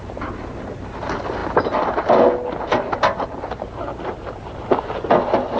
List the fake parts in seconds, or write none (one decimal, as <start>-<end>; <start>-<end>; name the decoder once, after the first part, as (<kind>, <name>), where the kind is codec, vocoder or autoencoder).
none